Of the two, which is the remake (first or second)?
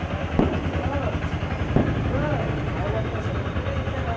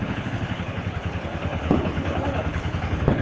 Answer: second